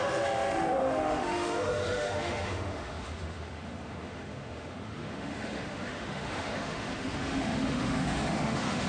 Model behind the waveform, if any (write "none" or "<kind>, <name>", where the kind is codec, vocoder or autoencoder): autoencoder, DAC-VAE